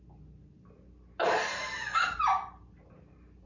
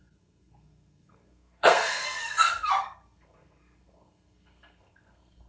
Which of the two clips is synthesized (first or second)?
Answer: second